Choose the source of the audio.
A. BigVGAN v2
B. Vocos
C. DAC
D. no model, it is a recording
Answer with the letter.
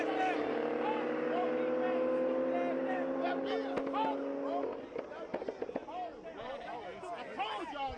D